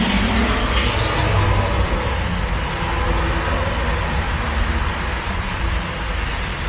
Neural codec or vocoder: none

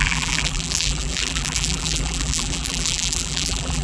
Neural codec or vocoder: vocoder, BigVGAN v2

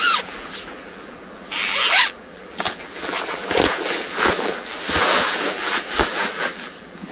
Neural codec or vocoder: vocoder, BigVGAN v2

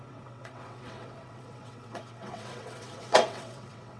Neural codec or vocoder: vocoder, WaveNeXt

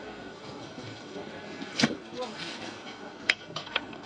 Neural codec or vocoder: codec, SNAC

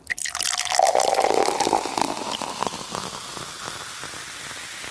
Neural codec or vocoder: none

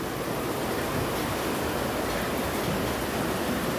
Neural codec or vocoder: none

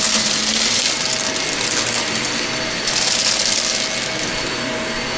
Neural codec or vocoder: none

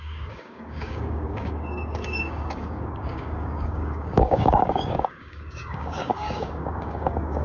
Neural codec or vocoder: codec, DAC